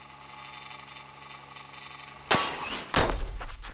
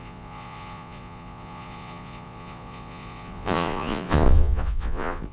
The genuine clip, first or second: first